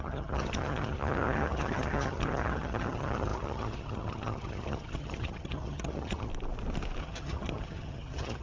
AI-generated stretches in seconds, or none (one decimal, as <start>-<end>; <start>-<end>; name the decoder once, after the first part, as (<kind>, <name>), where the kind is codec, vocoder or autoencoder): 0.0-6.3 (vocoder, HiFi-GAN); 7.0-8.4